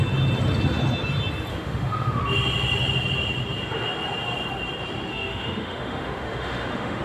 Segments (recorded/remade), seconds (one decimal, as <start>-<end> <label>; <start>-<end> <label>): 0.0-1.5 recorded; 1.5-2.2 remade; 2.2-5.1 recorded; 5.1-7.0 remade